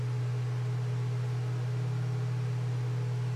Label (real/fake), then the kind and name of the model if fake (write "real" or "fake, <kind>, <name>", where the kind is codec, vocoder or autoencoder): real